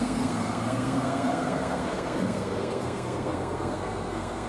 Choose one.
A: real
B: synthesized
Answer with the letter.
B